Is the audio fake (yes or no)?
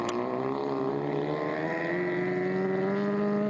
no